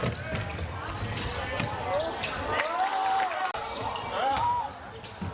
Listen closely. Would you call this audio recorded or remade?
recorded